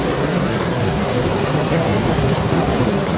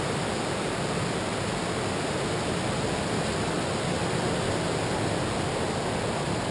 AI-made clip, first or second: first